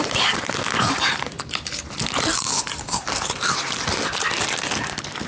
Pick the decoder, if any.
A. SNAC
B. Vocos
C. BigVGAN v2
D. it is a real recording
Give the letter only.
D